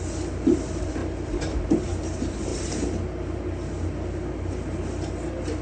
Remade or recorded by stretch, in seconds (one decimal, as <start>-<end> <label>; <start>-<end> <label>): 0.0-5.6 recorded